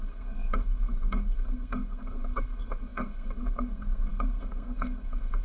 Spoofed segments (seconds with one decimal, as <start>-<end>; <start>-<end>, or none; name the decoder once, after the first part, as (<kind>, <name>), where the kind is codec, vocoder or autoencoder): 0.0-5.4 (codec, SNAC)